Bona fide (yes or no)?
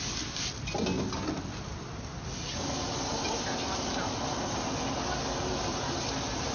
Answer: yes